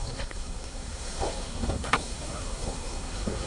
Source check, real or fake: fake